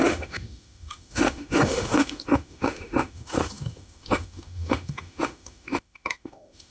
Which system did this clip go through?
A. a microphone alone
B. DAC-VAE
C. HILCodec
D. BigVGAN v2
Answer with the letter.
B